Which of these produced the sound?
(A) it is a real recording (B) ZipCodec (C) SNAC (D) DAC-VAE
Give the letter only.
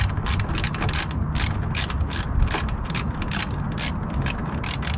A